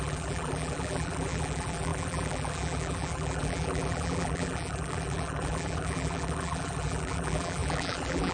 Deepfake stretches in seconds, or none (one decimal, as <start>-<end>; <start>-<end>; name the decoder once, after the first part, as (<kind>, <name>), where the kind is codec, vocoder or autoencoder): 0.0-8.3 (vocoder, BigVGAN v2)